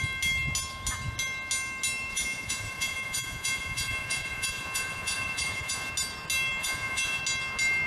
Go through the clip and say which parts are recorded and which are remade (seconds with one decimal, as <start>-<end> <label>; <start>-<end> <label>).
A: 0.0-2.1 recorded; 2.1-5.9 remade; 5.9-6.6 recorded; 6.6-7.2 remade; 7.2-7.9 recorded